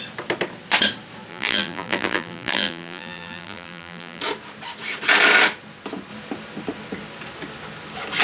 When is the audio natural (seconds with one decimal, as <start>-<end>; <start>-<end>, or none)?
0.0-1.3; 4.2-8.2